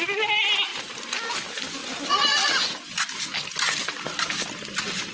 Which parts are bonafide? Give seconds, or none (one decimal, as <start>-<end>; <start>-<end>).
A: 0.0-5.1

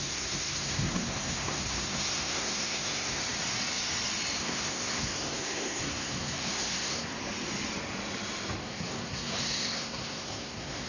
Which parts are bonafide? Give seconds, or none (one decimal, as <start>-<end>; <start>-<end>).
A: 3.2-4.4; 7.1-8.6

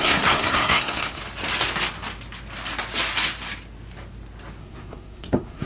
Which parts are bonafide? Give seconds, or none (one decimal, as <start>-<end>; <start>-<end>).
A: 1.2-4.6

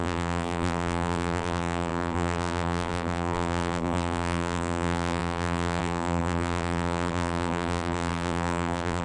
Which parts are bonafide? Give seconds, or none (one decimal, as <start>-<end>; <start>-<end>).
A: none

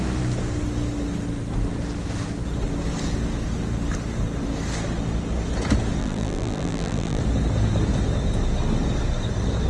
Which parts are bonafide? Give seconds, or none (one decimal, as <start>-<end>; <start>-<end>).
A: 0.0-6.0; 7.2-9.7

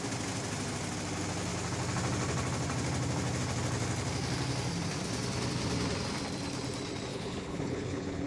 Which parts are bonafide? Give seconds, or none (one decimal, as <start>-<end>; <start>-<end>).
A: 0.0-7.1

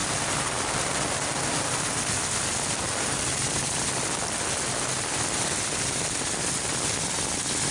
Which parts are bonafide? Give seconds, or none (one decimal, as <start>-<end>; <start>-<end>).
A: 0.0-7.7